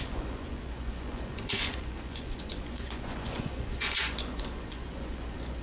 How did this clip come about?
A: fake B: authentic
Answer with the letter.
A